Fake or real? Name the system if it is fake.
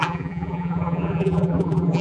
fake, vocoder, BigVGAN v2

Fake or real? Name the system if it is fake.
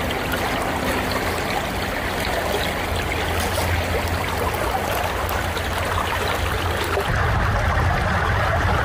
real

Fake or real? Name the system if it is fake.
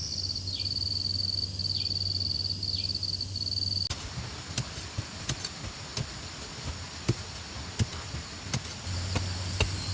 real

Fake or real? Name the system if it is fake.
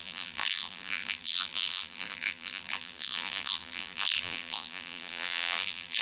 fake, vocoder, BigVGAN v2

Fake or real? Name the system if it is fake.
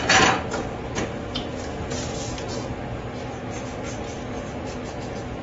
real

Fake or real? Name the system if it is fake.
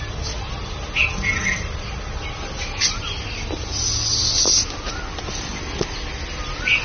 real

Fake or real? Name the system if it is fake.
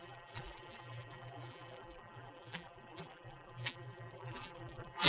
fake, vocoder, BigVGAN v2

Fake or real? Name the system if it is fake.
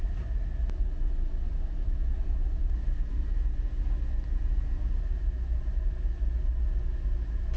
real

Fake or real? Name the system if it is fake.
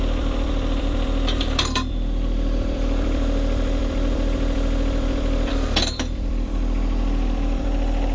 fake, vocoder, BigVGAN v2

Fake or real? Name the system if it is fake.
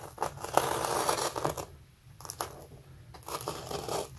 real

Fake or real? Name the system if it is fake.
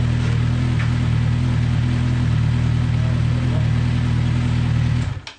real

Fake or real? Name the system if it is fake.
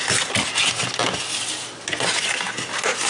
real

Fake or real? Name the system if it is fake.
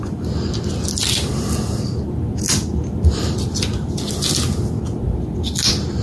real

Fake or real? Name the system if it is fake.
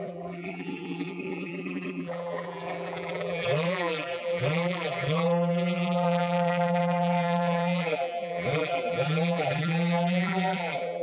fake, vocoder, BigVGAN v2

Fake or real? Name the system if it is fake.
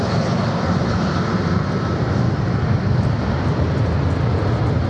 real